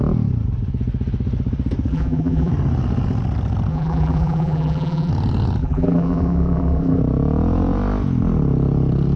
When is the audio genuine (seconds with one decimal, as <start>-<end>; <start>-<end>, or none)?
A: 0.0-1.9; 2.5-3.7; 5.1-5.6; 7.0-9.2

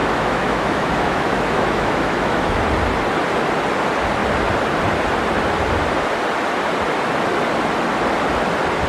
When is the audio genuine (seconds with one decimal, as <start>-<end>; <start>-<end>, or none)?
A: 2.6-8.9